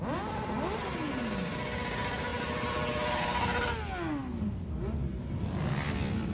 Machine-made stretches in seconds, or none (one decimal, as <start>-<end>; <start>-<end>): none